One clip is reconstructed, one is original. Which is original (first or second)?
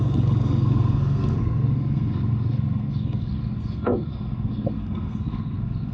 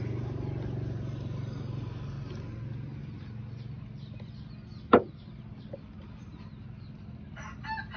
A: second